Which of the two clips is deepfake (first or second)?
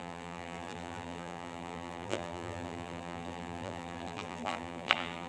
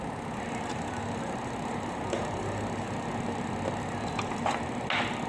first